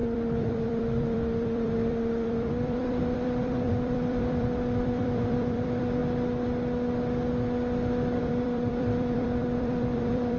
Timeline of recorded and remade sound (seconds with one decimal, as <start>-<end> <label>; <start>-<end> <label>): 0.0-6.0 remade; 6.0-8.2 recorded; 8.2-10.4 remade